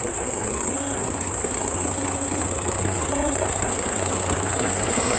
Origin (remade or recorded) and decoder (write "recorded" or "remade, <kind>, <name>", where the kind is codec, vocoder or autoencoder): remade, codec, SNAC